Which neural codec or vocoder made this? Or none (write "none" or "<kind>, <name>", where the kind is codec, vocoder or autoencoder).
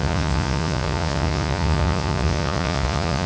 vocoder, Vocos